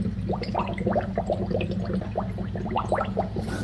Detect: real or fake real